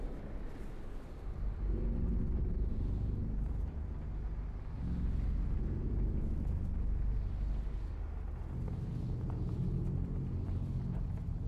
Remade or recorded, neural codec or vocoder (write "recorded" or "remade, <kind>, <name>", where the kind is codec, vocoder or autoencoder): recorded